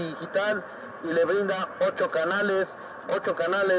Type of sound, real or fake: real